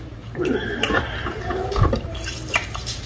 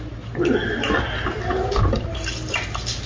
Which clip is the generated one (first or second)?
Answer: first